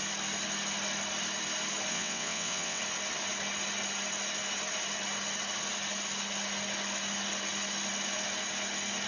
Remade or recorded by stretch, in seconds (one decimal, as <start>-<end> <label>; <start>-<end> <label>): 0.0-1.9 recorded; 1.9-2.8 remade; 2.8-9.1 recorded